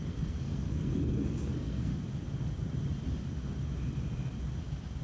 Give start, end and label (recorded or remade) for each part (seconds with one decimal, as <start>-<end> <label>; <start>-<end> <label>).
0.0-1.9 remade; 1.9-5.0 recorded